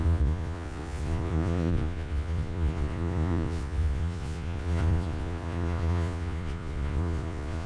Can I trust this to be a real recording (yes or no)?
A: no